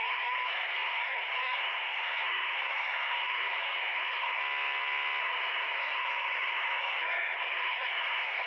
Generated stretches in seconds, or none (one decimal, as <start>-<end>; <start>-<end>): 0.0-4.4; 5.2-8.5